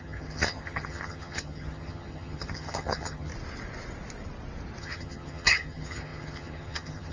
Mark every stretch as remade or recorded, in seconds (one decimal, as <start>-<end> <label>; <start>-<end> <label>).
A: 0.0-3.3 remade; 3.3-4.8 recorded; 4.8-7.1 remade

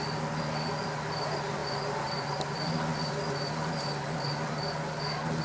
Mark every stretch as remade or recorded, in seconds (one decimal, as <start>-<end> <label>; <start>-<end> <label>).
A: 0.0-5.4 recorded

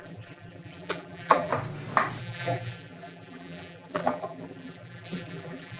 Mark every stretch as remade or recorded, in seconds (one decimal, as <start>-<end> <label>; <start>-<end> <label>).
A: 0.0-1.5 remade; 1.5-2.2 recorded; 2.2-5.8 remade

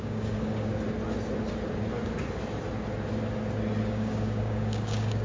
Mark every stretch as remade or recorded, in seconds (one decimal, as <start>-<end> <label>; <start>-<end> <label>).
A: 0.0-0.7 remade; 0.7-3.8 recorded; 3.8-5.2 remade

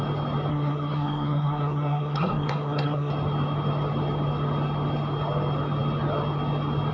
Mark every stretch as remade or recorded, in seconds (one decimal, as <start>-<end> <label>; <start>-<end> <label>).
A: 0.0-0.5 recorded; 0.5-3.1 remade; 3.1-6.9 recorded